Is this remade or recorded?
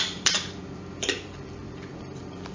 remade